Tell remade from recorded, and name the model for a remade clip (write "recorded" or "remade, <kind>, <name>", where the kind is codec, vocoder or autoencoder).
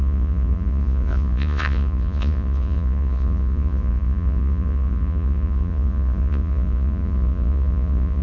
remade, vocoder, Vocos